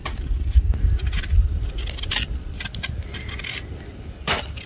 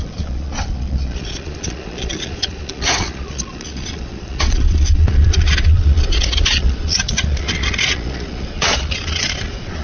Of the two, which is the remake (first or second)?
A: second